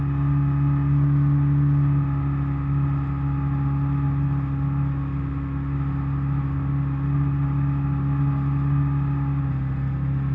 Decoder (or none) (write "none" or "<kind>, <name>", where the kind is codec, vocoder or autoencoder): none